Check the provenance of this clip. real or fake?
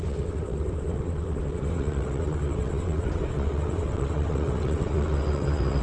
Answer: fake